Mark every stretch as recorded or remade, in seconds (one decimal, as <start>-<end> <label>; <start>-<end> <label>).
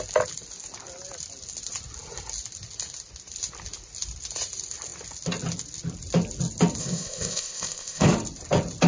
0.0-6.8 recorded; 6.8-8.1 remade; 8.1-8.9 recorded